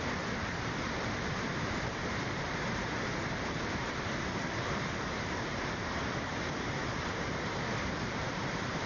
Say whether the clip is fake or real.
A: fake